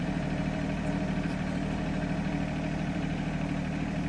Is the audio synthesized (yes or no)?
yes